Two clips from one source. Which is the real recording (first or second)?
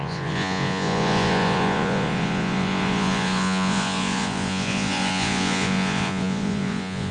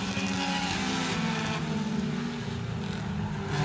second